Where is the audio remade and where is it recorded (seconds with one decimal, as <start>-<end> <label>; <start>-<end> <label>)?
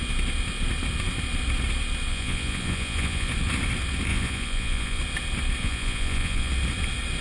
0.0-2.1 recorded; 2.1-3.3 remade; 3.3-4.1 recorded; 4.1-5.0 remade; 5.0-5.6 recorded; 5.6-6.5 remade; 6.5-7.2 recorded